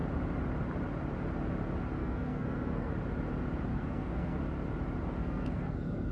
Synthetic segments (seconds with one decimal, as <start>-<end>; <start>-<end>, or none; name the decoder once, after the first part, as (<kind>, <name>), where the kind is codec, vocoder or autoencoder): 2.0-2.9 (codec, SNAC); 3.7-4.4; 5.2-6.1